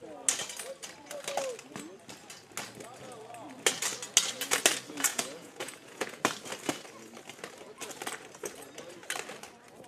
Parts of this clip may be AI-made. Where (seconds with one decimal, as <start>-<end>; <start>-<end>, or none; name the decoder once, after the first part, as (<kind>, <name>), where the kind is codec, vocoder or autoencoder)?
5.1-6.2 (vocoder, Vocos)